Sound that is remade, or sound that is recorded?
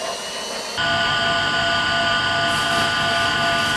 recorded